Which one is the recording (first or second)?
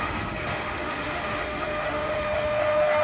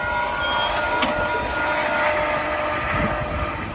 second